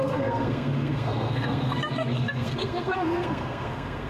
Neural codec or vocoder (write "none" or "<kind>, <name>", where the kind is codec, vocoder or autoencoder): codec, SNAC